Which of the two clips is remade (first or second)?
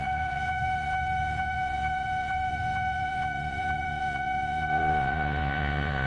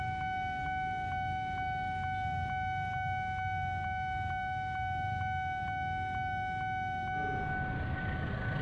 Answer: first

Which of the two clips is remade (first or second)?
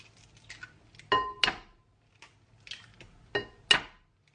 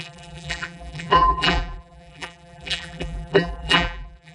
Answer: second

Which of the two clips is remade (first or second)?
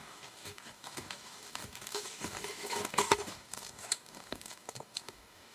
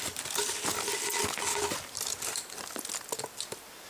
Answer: first